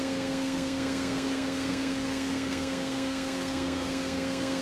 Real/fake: fake